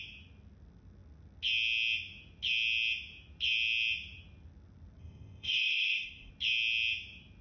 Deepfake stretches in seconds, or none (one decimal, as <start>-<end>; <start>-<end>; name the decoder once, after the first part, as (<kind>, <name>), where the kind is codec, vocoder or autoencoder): 5.0-6.3 (codec, ZipCodec)